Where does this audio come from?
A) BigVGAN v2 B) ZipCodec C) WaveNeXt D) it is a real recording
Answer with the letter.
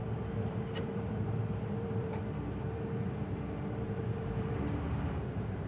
A